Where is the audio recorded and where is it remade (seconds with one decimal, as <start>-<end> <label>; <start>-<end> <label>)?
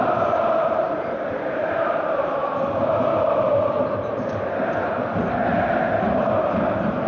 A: 0.0-2.4 remade; 2.4-7.1 recorded